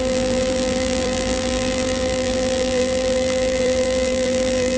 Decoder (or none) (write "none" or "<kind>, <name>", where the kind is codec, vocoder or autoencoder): vocoder, BigVGAN v2